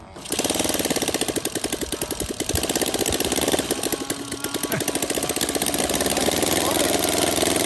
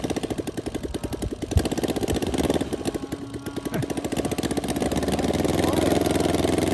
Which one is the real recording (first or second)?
second